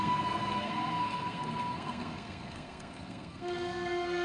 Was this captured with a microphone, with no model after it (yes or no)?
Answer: no